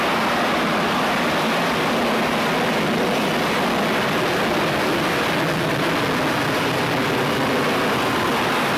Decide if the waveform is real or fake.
real